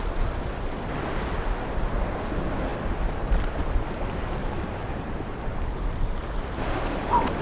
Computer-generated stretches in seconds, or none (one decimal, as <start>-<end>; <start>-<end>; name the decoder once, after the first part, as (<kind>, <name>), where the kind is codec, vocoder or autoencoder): 4.4-5.6 (vocoder, BigVGAN v2)